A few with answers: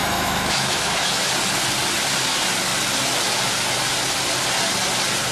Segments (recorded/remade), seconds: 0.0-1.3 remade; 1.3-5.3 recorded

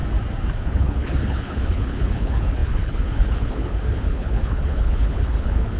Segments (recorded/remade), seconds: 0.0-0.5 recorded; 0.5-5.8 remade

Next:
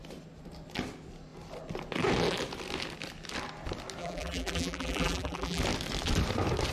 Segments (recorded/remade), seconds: 0.0-4.0 recorded; 4.0-5.6 remade; 5.6-6.7 recorded

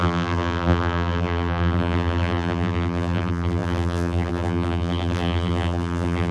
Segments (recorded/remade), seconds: 0.0-6.3 remade

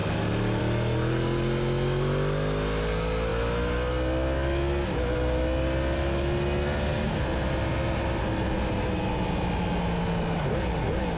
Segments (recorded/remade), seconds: 0.0-11.2 recorded